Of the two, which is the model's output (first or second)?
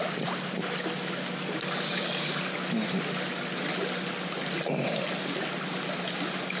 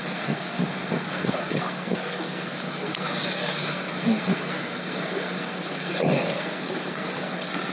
second